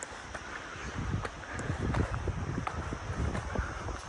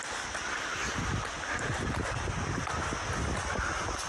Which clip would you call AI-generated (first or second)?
first